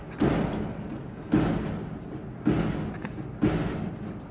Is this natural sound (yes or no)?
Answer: yes